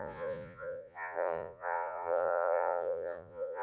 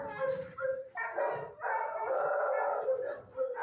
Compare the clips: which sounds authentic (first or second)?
second